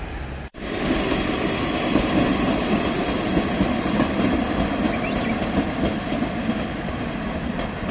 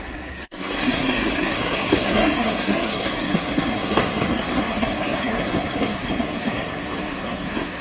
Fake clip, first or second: second